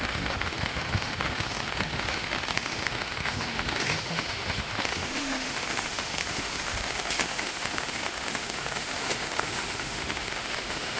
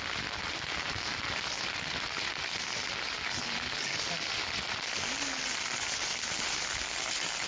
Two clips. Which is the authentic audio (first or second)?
second